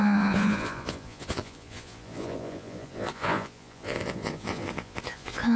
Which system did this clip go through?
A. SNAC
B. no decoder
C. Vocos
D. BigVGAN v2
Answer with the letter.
C